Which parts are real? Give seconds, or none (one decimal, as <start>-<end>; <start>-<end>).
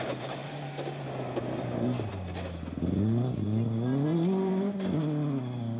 0.0-5.8